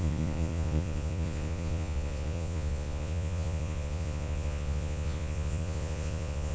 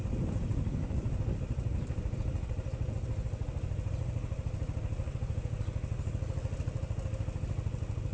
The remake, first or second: first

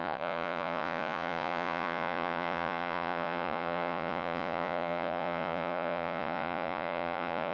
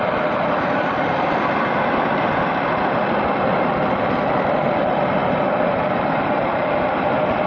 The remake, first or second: first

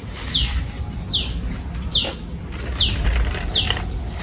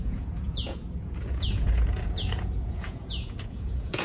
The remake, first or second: second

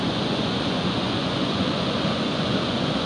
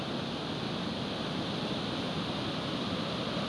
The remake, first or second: first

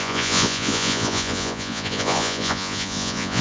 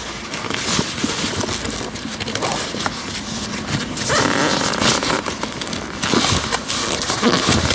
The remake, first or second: first